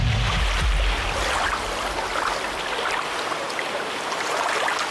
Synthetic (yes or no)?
no